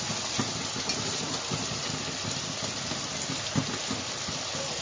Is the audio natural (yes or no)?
yes